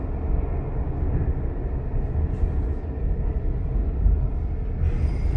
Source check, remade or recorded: recorded